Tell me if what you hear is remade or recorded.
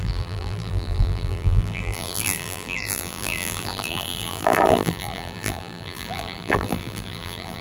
remade